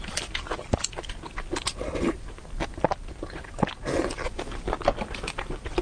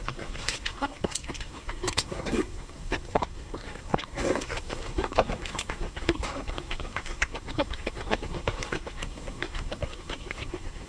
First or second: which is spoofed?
second